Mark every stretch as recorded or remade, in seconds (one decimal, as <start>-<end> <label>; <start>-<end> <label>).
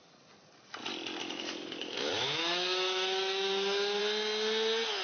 0.0-1.2 recorded; 1.2-4.0 remade; 4.0-5.0 recorded